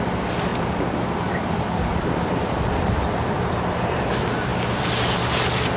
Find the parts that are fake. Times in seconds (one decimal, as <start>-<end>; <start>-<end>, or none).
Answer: none